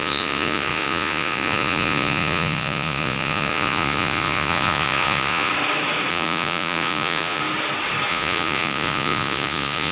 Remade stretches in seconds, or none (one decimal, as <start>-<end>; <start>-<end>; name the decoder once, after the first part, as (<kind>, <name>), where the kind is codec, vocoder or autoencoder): 0.0-5.5 (vocoder, Vocos); 6.1-7.4; 8.1-9.9